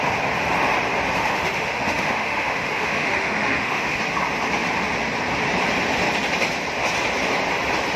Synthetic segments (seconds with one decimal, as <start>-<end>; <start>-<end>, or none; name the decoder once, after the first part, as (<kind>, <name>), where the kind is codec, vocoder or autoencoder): 1.2-4.0 (autoencoder, DAC-VAE)